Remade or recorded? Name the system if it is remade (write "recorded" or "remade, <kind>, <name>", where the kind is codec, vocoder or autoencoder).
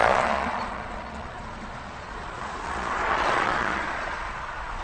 remade, vocoder, Vocos